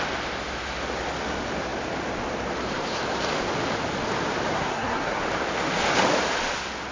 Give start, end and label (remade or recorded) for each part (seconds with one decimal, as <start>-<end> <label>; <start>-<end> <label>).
0.0-4.5 recorded; 4.5-5.2 remade; 5.2-6.9 recorded